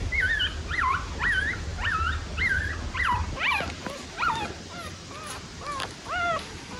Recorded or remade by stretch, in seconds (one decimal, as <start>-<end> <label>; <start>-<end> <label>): 0.0-6.8 recorded

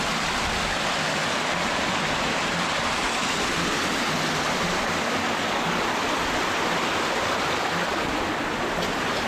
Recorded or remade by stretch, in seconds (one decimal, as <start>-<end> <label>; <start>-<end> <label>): 0.0-9.3 recorded

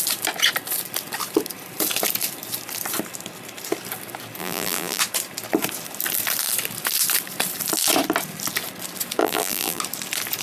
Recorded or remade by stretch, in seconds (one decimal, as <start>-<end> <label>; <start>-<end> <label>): 0.0-4.4 recorded; 4.4-5.0 remade; 5.0-9.2 recorded; 9.2-9.8 remade; 9.8-10.4 recorded

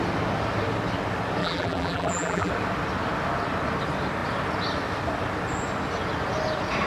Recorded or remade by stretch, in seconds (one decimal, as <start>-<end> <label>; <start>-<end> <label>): 0.0-1.4 recorded; 1.4-2.5 remade; 2.5-6.9 recorded

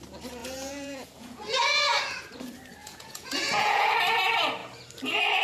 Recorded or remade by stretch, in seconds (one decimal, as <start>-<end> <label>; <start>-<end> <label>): 0.0-0.4 recorded; 0.4-2.2 remade; 2.2-2.8 recorded; 2.8-3.9 remade; 3.9-5.4 recorded